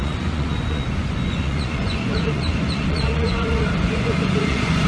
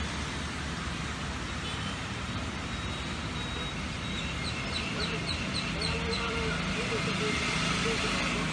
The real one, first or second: second